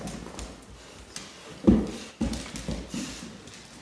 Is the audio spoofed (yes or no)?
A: no